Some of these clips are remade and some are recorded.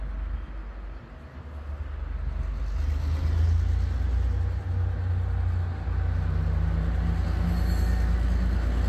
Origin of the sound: recorded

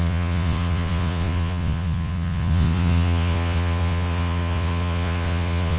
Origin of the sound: remade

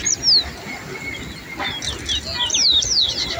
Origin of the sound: recorded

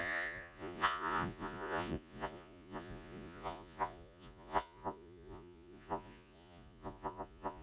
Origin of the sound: remade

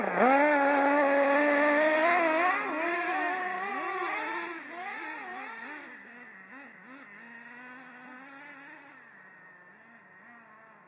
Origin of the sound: recorded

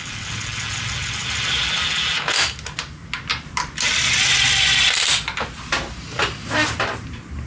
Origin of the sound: recorded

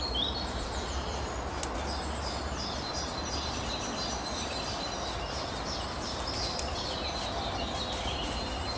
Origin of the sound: recorded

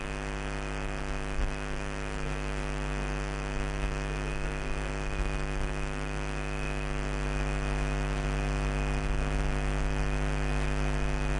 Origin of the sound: recorded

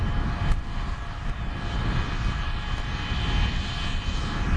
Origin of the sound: recorded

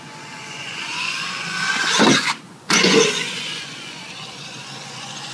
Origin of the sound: remade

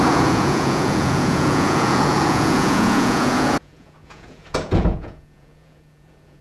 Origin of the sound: remade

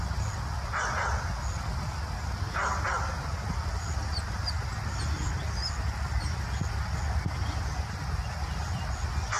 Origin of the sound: recorded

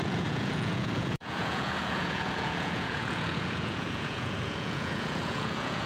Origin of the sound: remade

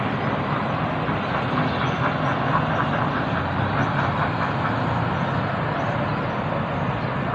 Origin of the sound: recorded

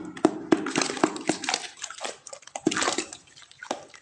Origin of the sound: recorded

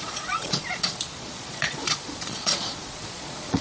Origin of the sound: remade